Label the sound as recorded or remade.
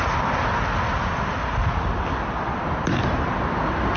recorded